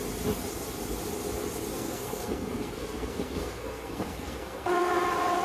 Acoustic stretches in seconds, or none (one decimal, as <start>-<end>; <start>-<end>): 0.0-1.7; 4.9-5.4